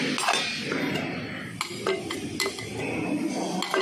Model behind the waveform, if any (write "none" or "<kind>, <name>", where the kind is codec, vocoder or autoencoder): none